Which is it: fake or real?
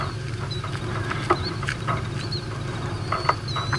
real